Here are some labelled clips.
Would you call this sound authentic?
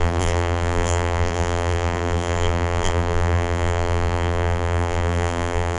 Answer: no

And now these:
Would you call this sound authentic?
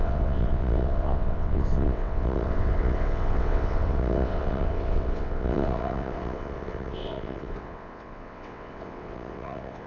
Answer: no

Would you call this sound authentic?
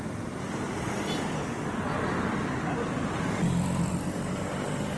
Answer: yes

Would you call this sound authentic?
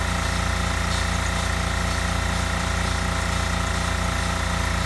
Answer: yes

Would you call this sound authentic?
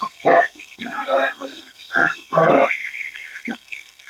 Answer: no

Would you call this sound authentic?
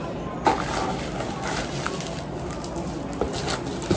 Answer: yes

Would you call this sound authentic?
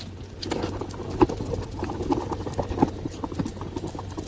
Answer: yes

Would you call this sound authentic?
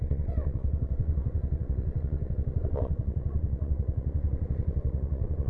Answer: no